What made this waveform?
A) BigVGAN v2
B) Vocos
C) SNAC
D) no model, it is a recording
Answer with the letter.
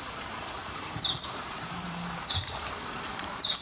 A